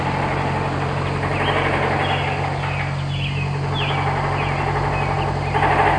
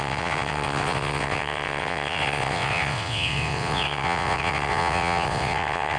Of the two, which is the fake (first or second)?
second